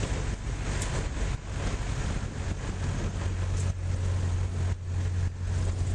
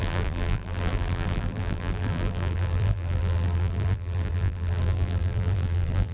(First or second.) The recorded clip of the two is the first